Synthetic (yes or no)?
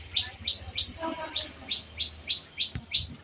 no